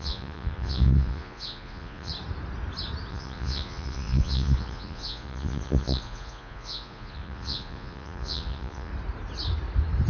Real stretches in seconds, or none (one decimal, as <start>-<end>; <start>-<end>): 2.1-3.1; 8.9-10.1